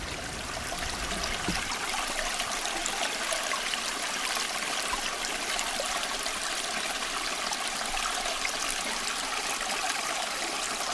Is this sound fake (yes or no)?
no